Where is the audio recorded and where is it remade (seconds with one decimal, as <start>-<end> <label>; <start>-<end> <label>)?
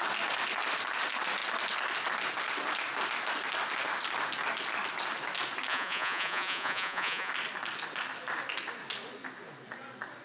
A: 0.0-5.7 recorded; 5.7-7.3 remade; 7.3-10.2 recorded